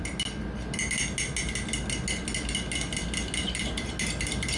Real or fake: real